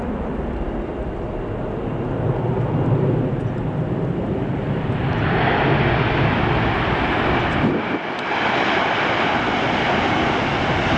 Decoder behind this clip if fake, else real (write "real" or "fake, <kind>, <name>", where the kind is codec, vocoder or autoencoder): real